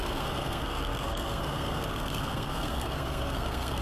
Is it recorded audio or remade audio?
remade